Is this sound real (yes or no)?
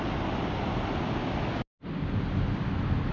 yes